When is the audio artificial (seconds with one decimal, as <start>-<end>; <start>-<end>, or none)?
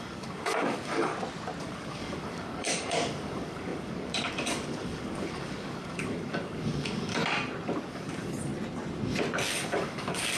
0.0-1.1; 1.6-7.2; 7.9-8.5; 9.5-10.4